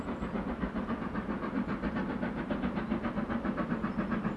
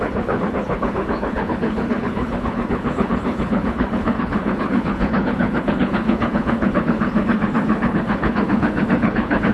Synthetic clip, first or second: second